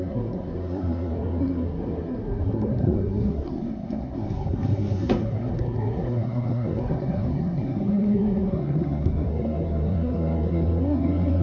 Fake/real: fake